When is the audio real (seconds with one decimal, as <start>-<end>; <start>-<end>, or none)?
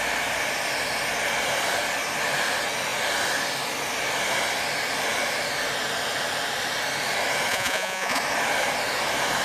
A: 0.0-7.5; 8.2-9.4